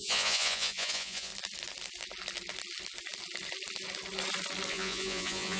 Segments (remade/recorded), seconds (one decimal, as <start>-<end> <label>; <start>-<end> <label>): 0.0-1.3 remade; 1.3-4.7 recorded; 4.7-5.6 remade